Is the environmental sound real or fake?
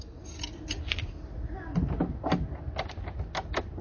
real